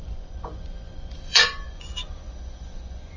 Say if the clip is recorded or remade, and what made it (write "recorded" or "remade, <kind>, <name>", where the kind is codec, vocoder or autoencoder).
remade, vocoder, Vocos